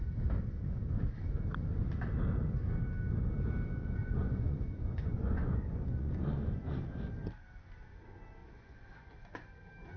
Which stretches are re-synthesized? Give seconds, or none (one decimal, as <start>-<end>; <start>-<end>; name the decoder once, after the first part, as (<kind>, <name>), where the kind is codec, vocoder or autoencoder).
3.8-6.8 (vocoder, Vocos); 8.4-9.6